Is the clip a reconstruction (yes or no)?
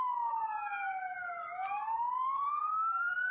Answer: no